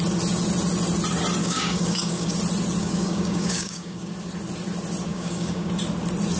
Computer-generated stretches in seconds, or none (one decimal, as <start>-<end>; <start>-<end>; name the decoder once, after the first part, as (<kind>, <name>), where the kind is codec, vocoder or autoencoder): 1.4-2.3 (codec, DAC); 2.8-4.1; 5.1-5.7